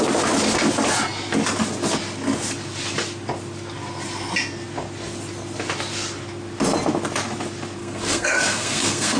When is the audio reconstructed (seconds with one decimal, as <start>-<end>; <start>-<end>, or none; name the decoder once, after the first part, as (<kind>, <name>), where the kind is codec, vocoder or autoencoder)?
7.8-9.2 (codec, SNAC)

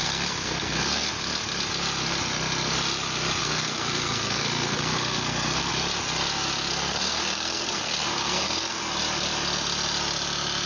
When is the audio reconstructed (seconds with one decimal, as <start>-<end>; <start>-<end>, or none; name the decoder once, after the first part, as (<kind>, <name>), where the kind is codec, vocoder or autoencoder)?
0.0-1.1 (codec, SNAC); 3.4-5.7; 6.7-8.8

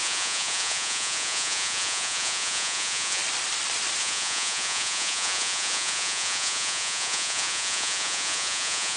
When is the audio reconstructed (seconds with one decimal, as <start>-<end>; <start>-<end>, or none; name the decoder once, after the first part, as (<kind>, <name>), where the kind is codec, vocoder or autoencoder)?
0.0-3.2 (vocoder, Vocos); 4.0-9.0

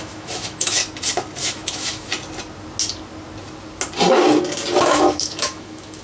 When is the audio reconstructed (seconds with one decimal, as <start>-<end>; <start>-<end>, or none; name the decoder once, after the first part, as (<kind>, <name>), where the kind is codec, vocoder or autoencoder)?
0.0-0.8 (autoencoder, DAC-VAE); 1.4-2.1; 4.8-6.0

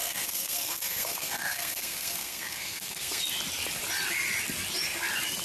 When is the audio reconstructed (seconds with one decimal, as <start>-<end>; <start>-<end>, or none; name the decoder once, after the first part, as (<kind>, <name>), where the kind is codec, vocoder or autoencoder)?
0.0-3.2 (codec, SNAC)

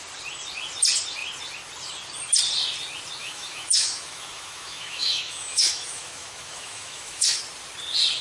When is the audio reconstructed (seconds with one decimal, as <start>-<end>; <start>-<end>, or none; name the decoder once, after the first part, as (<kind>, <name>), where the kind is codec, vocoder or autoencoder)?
3.2-7.4 (autoencoder, DAC-VAE)